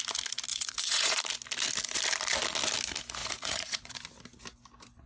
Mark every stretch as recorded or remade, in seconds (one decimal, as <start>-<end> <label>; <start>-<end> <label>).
0.0-0.5 recorded; 0.5-1.2 remade; 1.2-3.2 recorded; 3.2-4.0 remade; 4.0-5.1 recorded